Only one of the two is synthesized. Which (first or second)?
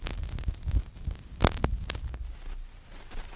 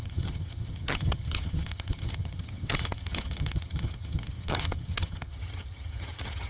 second